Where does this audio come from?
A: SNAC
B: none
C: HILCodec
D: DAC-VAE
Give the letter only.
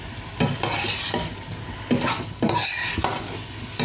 B